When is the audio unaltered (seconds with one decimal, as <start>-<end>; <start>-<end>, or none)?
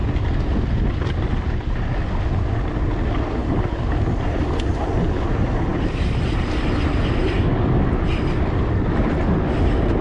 0.0-3.4; 4.2-5.7; 7.4-10.0